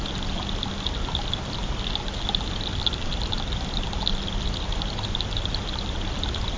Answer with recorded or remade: recorded